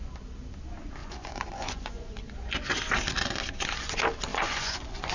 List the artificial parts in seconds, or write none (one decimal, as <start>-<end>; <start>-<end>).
1.0-2.8; 4.3-5.1